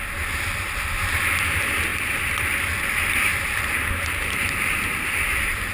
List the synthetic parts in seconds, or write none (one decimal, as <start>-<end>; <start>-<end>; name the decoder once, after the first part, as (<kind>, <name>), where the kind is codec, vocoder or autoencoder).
1.9-2.5 (vocoder, BigVGAN v2); 3.3-5.7